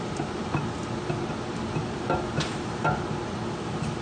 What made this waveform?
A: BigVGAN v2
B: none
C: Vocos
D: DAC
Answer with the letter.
B